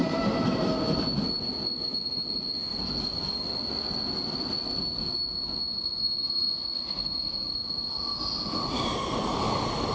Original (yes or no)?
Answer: yes